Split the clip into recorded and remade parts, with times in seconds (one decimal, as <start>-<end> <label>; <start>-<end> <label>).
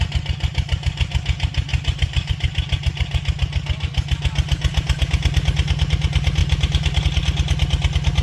0.0-1.7 recorded; 1.7-2.3 remade; 2.3-6.4 recorded; 6.4-7.0 remade; 7.0-8.2 recorded